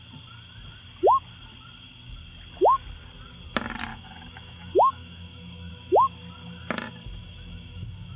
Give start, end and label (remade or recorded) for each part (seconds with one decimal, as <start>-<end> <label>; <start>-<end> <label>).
0.0-3.9 recorded; 3.9-5.7 remade; 5.7-7.2 recorded; 7.2-8.2 remade